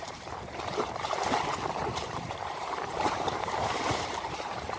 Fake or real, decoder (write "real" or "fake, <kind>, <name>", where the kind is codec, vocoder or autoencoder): fake, vocoder, BigVGAN v2